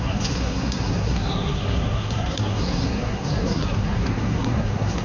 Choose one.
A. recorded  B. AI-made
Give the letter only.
B